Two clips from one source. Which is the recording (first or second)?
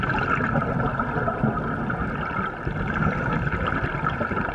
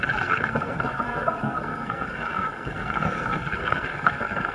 first